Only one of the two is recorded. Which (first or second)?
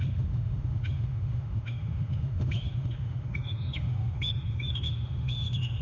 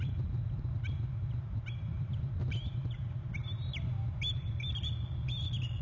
second